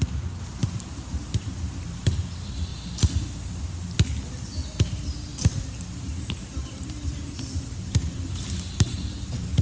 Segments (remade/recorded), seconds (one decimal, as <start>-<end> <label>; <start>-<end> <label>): 0.0-0.6 recorded; 0.6-2.1 remade; 2.1-5.3 recorded; 5.3-9.6 remade